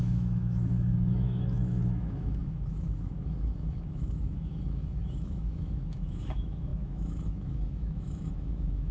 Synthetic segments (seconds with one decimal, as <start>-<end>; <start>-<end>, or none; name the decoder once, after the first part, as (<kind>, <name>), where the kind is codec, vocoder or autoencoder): 0.0-8.9 (autoencoder, DAC-VAE)